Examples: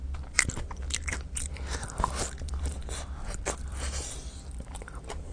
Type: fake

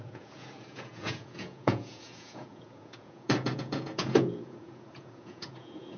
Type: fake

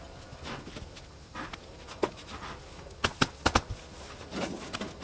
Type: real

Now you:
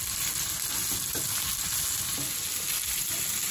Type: real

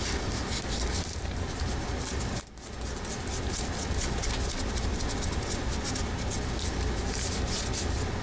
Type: real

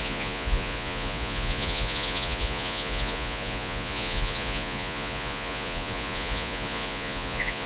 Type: fake